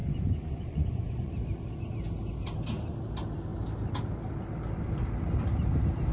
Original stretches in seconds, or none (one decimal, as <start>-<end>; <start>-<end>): 1.3-6.1